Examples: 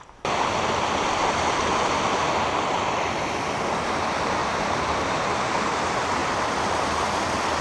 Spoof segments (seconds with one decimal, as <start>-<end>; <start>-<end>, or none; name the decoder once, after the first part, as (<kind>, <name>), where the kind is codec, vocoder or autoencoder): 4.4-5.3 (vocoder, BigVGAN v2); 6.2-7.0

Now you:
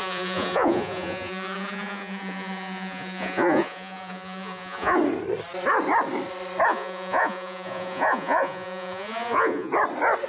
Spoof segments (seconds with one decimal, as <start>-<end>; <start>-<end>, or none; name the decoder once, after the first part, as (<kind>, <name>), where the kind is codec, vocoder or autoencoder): 0.0-5.0 (vocoder, Vocos); 6.7-9.7

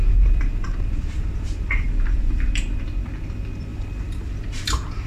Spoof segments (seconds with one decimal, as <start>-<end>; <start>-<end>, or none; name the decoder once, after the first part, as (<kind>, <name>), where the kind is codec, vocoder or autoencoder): 0.0-3.1 (vocoder, BigVGAN v2); 3.7-5.1

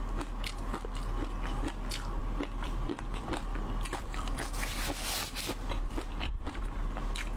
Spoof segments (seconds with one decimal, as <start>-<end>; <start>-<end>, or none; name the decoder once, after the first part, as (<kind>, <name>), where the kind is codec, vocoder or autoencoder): 2.2-6.6 (vocoder, BigVGAN v2)

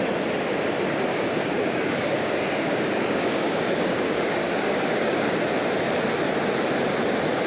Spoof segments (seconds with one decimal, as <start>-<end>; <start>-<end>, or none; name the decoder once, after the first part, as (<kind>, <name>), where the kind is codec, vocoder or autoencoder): 1.1-5.3 (codec, DAC)